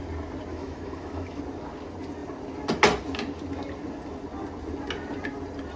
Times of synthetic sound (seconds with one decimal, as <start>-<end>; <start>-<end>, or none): 0.5-1.4